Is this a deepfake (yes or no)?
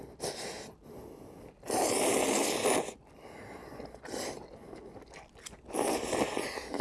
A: no